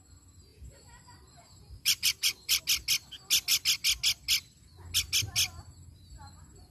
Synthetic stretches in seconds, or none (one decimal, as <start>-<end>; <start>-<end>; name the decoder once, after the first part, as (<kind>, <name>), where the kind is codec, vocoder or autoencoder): 0.5-2.6 (vocoder, BigVGAN v2)